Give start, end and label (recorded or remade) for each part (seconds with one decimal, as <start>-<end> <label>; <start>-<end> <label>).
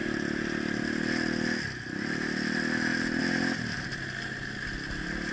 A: 0.0-5.3 recorded